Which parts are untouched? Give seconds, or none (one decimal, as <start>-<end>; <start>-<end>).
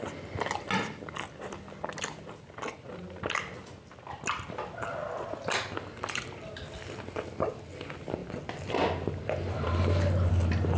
0.0-10.8